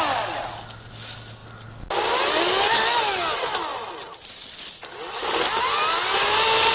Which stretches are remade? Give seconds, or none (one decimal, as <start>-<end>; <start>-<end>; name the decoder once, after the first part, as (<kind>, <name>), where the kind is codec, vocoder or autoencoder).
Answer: none